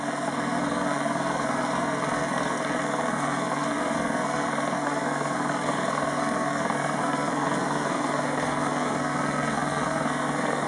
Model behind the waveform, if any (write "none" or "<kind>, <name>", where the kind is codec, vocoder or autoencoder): codec, SNAC